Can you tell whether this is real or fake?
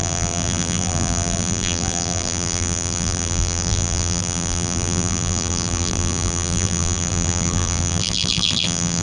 fake